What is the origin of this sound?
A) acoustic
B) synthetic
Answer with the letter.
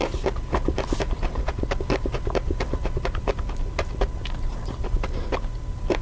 A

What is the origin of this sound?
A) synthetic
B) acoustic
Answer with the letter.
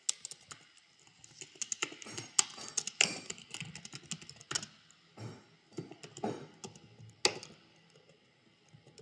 B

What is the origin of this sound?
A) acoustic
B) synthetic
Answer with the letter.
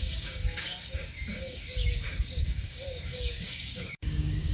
B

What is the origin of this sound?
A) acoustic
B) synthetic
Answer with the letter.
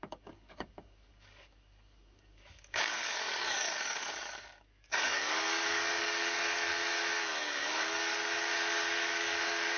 B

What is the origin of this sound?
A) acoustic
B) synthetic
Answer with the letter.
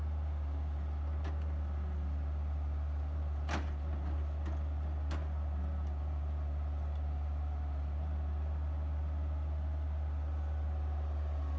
A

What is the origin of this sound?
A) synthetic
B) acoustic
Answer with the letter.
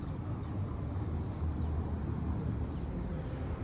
B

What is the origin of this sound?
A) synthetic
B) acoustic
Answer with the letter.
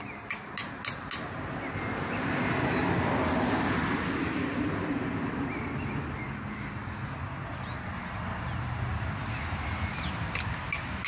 B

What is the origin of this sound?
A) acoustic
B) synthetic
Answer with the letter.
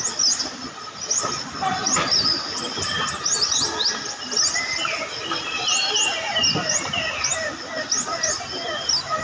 A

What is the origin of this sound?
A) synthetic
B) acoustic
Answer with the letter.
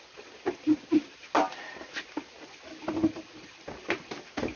B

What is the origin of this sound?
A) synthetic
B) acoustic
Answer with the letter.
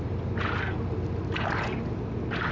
B